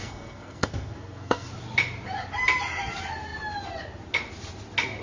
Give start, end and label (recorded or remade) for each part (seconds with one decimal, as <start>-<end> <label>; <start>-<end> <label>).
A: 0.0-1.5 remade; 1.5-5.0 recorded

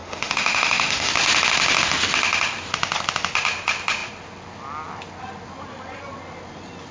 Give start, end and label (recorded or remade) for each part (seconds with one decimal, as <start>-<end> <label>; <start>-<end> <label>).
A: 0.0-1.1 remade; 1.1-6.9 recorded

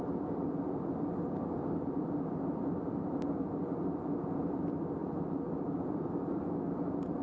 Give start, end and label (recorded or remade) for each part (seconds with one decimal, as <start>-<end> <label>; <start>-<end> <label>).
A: 0.0-7.2 recorded